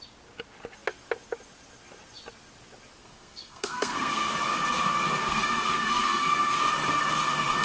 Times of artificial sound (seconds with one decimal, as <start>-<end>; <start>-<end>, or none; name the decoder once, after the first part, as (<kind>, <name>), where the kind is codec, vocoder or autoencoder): 3.0-4.3 (codec, SNAC); 5.2-6.6